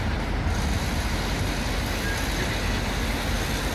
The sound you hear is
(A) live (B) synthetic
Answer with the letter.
A